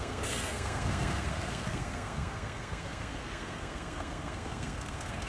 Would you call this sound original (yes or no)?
no